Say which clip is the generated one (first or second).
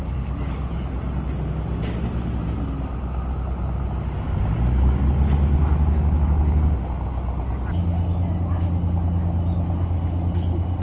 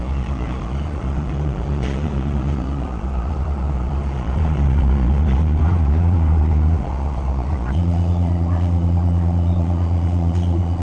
second